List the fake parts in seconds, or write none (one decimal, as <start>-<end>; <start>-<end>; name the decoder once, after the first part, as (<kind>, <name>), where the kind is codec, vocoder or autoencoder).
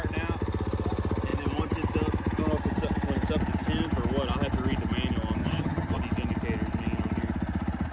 5.4-6.0 (vocoder, HiFi-GAN)